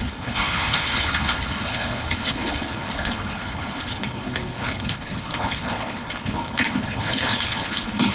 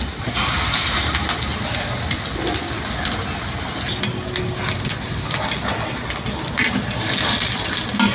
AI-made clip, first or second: first